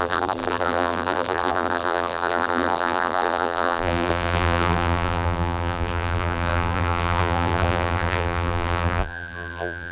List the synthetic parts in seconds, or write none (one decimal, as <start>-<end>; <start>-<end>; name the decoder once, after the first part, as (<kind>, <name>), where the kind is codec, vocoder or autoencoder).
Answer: 0.0-9.9 (vocoder, BigVGAN v2)